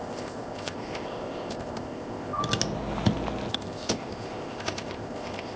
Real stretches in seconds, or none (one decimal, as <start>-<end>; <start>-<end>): 2.4-3.5